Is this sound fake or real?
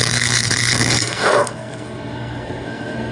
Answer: fake